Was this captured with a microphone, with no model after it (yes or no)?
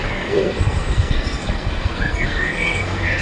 no